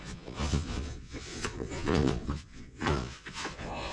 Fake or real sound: fake